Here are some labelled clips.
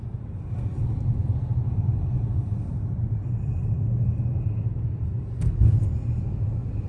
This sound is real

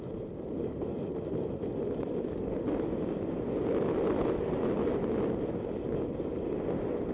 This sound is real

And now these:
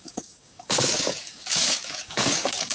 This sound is fake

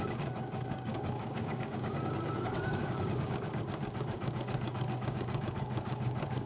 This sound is fake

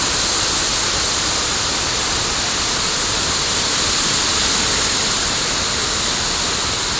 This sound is real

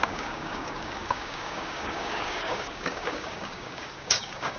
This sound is fake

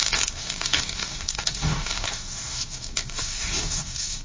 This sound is fake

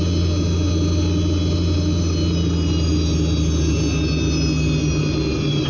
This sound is real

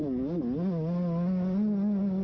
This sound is real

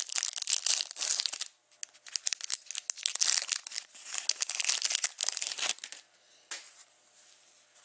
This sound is real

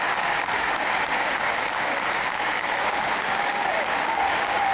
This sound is fake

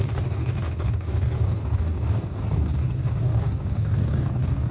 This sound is fake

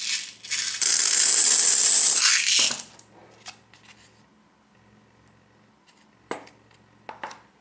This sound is real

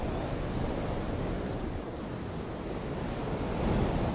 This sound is real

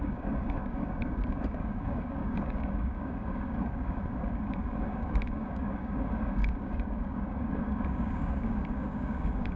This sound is fake